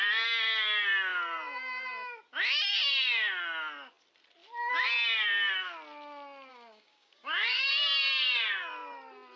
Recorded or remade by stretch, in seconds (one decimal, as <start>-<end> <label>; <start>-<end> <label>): 0.0-6.5 recorded; 6.5-7.7 remade; 7.7-9.4 recorded